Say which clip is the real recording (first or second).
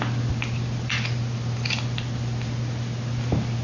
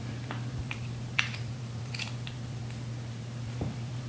first